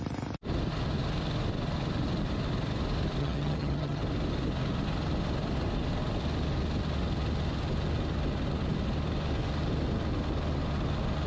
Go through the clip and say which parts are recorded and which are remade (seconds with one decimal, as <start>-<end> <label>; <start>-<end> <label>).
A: 0.0-3.2 recorded; 3.2-4.0 remade; 4.0-11.3 recorded